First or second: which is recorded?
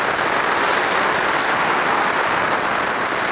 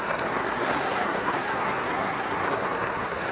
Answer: first